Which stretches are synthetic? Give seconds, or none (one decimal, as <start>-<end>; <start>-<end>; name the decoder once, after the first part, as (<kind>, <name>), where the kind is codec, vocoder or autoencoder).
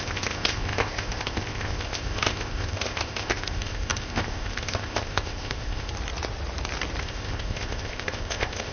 0.0-5.9 (codec, ZipCodec); 7.0-8.7